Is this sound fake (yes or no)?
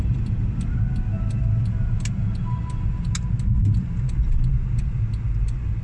no